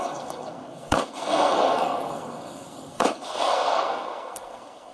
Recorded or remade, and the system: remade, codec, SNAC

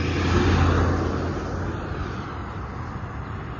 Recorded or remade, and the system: recorded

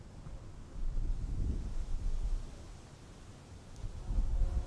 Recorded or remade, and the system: recorded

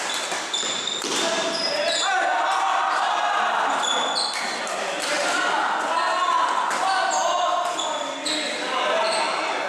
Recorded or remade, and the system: recorded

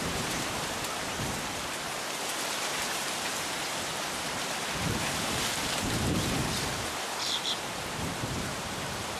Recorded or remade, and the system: remade, vocoder, BigVGAN v2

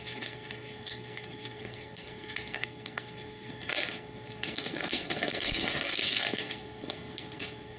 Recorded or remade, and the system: remade, codec, SNAC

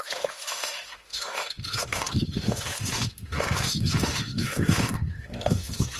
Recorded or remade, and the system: remade, autoencoder, DAC-VAE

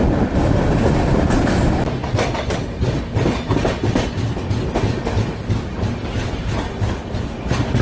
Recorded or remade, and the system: recorded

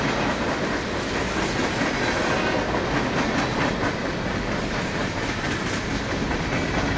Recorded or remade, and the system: recorded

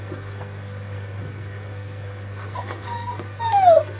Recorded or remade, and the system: remade, codec, SNAC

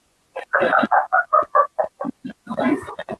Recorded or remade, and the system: remade, vocoder, Vocos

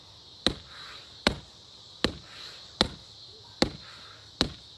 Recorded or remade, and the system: recorded